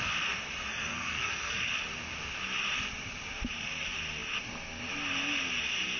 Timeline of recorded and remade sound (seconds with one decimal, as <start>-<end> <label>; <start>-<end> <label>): 0.0-0.7 recorded; 0.7-1.7 remade; 1.7-6.0 recorded